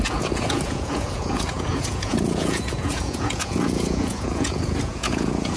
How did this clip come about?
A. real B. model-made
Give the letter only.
B